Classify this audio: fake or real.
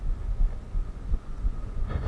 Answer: fake